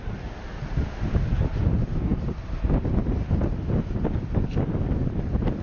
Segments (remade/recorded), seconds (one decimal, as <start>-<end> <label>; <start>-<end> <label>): 0.0-5.6 recorded